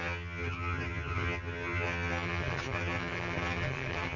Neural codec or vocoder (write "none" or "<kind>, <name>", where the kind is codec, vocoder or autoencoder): vocoder, HiFi-GAN